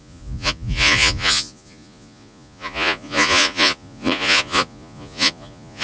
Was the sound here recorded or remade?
remade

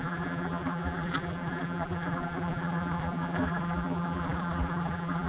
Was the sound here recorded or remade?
remade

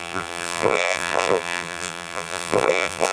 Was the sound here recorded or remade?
remade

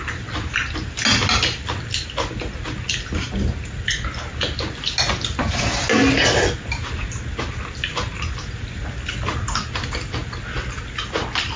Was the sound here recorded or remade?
recorded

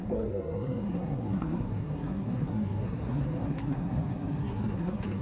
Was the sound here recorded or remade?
remade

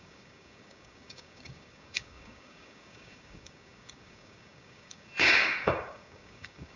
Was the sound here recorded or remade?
remade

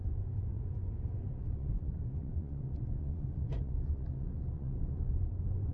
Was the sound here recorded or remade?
remade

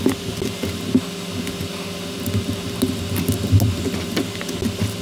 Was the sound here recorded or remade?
recorded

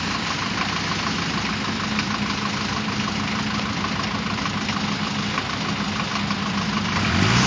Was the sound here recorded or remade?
recorded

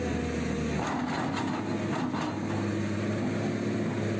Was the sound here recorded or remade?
recorded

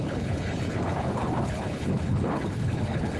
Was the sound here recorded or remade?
remade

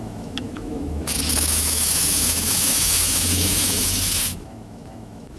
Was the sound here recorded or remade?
remade